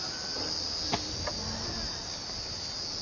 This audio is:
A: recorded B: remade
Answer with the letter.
A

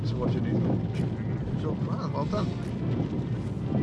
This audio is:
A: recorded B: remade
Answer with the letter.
A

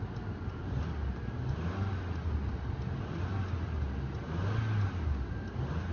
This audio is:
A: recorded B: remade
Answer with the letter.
A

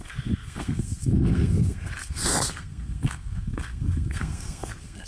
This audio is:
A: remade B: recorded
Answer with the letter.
A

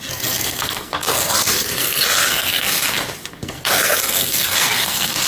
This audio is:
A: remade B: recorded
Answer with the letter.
A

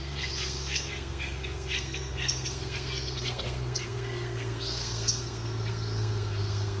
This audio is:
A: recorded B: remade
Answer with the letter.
B